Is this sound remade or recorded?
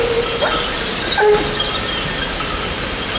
recorded